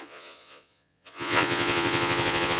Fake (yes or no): yes